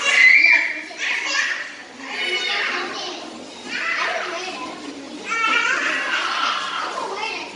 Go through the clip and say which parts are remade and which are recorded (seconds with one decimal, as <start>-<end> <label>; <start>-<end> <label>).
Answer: 0.0-7.6 recorded